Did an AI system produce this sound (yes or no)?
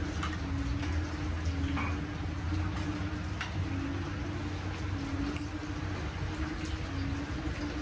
no